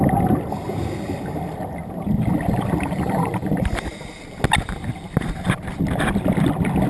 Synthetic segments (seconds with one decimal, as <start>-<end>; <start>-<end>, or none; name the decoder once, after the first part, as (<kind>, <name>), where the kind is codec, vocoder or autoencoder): none